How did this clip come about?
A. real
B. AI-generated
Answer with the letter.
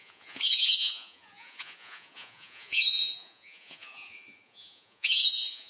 B